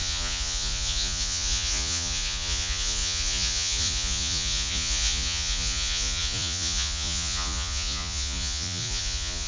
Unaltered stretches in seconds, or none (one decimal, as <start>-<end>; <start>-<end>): none